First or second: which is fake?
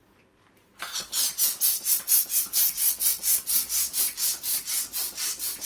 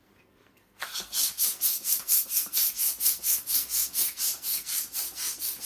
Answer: second